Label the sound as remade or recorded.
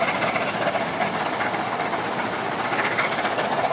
recorded